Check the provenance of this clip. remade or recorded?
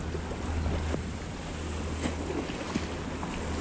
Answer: recorded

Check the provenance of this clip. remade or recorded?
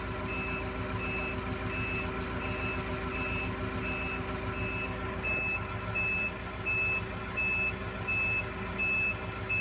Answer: recorded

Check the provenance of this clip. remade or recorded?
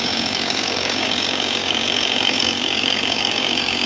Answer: remade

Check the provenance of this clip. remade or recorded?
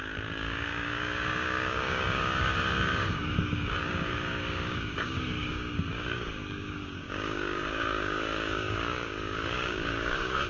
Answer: remade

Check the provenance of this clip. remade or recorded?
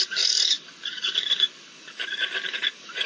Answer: remade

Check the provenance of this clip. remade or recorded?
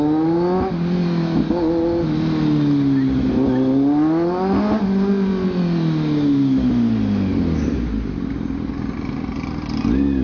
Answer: recorded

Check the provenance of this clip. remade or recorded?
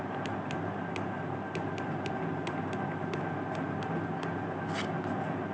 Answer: recorded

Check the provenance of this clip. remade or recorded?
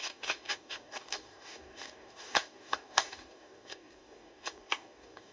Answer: remade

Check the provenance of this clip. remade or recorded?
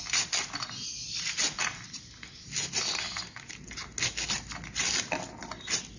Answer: recorded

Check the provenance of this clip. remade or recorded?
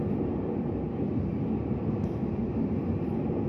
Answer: recorded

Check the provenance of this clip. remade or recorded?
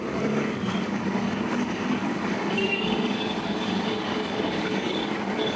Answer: remade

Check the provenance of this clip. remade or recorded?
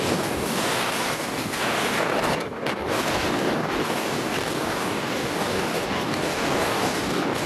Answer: remade